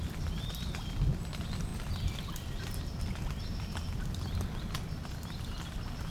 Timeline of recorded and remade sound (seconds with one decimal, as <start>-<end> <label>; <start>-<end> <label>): 0.0-1.7 remade; 1.7-5.4 recorded; 5.4-6.1 remade